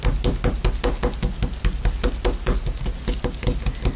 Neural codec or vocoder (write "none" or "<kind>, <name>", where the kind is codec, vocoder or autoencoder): none